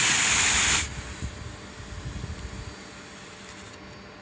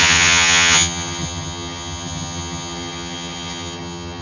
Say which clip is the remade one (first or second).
second